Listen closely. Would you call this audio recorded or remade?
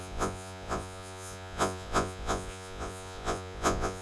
remade